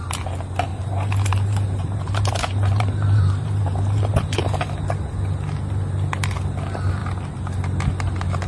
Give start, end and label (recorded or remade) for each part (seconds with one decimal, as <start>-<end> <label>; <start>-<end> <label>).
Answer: 0.0-0.7 recorded; 0.7-4.8 remade; 4.8-8.5 recorded